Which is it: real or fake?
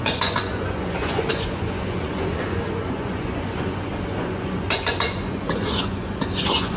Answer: fake